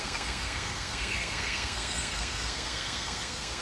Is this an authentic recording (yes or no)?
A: no